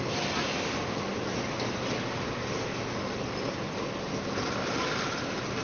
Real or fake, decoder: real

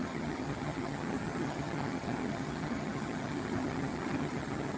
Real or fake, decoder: fake, vocoder, HiFi-GAN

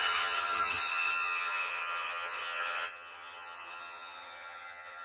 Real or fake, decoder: fake, vocoder, HiFi-GAN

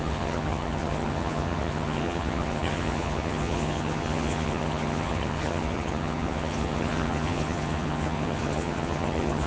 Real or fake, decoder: fake, vocoder, HiFi-GAN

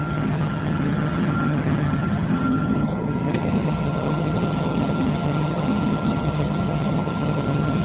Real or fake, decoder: fake, vocoder, HiFi-GAN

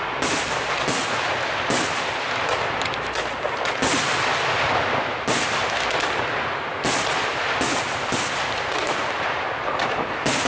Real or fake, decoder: real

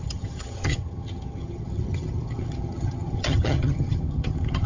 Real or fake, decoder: fake, vocoder, HiFi-GAN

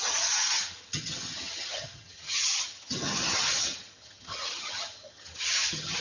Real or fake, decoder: fake, vocoder, HiFi-GAN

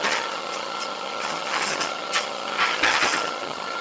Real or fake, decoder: fake, vocoder, HiFi-GAN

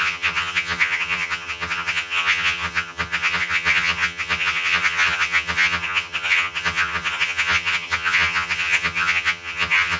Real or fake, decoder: fake, vocoder, HiFi-GAN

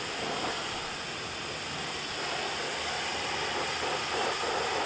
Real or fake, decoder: real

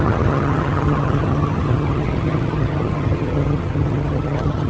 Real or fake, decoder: fake, vocoder, HiFi-GAN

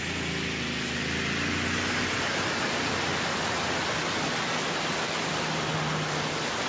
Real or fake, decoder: real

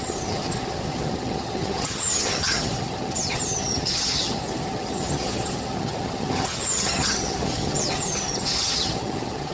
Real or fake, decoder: fake, vocoder, HiFi-GAN